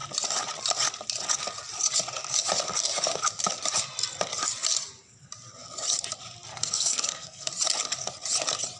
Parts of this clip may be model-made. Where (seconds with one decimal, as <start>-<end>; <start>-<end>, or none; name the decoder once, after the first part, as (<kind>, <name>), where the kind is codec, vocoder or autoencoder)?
6.5-7.5 (codec, SNAC)